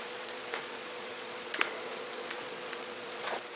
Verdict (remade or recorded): remade